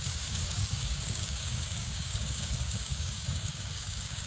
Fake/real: fake